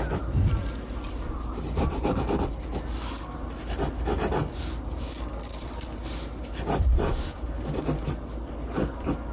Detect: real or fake real